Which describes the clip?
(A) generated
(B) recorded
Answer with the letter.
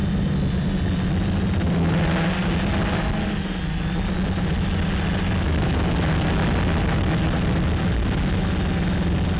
B